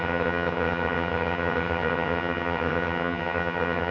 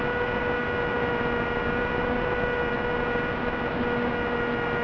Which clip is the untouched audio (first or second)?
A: second